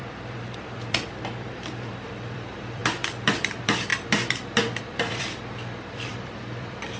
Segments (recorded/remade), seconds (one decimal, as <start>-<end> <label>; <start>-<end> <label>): 0.0-2.8 remade; 2.8-3.3 recorded; 3.3-3.9 remade; 3.9-4.8 recorded; 4.8-7.0 remade